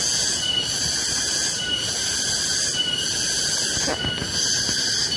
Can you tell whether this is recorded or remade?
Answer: recorded